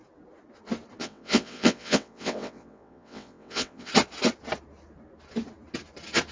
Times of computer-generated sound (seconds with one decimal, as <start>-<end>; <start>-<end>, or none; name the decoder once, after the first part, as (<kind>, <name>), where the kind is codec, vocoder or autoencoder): 1.0-3.9 (vocoder, WaveNeXt)